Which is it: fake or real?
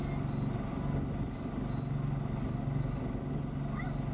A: real